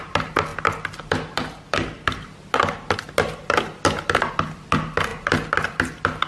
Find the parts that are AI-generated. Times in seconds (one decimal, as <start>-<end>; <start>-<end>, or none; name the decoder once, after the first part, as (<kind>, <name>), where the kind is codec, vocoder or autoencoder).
none